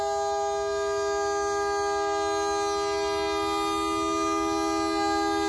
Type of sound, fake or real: real